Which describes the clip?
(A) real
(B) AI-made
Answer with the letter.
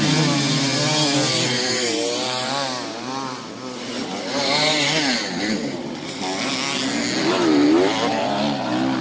A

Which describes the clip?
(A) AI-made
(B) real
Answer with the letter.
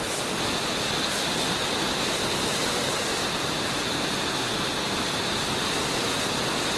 B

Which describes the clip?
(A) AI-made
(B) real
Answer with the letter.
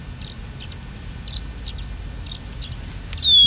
B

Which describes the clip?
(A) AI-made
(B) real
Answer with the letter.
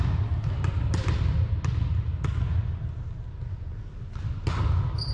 B